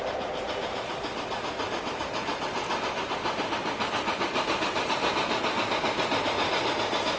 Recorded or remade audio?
recorded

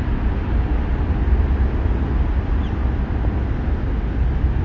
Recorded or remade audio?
recorded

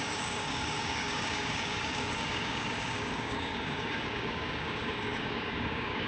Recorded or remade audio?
remade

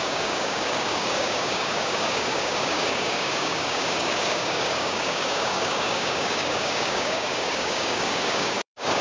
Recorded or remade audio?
remade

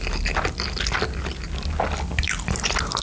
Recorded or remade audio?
recorded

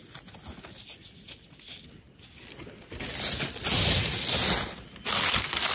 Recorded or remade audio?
recorded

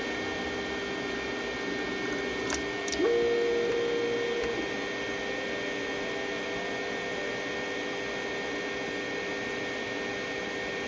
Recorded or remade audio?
recorded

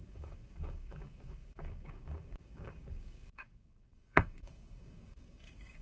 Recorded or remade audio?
remade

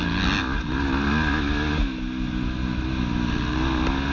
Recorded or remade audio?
recorded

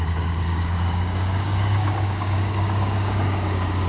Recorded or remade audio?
remade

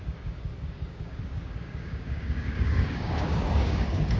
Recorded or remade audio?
remade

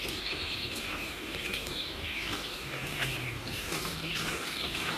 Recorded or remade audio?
remade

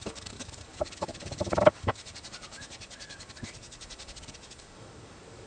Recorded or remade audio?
remade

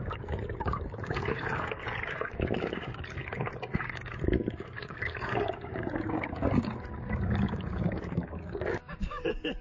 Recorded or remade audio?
remade